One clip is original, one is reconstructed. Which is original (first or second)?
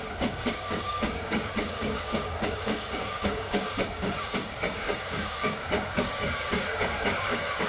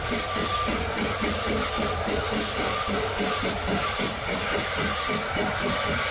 second